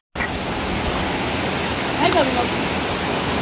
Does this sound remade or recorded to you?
recorded